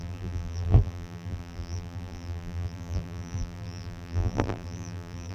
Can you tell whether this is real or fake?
fake